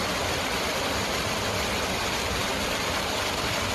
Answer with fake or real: real